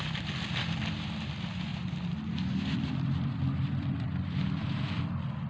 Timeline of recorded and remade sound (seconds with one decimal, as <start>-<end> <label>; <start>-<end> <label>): 0.0-1.7 recorded; 1.7-5.0 remade; 5.0-5.5 recorded